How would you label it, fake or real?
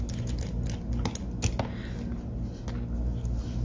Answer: real